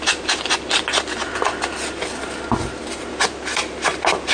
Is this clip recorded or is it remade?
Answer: recorded